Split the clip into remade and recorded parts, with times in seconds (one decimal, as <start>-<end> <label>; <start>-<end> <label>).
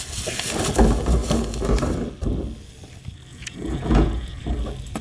0.0-3.3 recorded; 3.3-4.4 remade; 4.4-5.0 recorded